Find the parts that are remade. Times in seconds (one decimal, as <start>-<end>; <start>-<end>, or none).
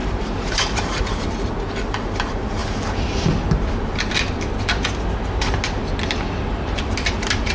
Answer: 0.0-2.6; 7.1-7.5